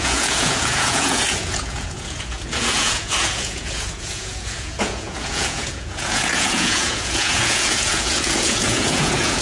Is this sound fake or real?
fake